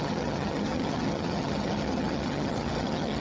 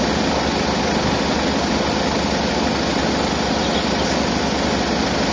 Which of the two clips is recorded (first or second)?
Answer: second